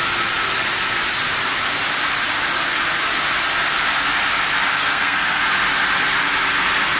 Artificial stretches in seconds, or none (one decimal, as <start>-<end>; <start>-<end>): 4.7-5.4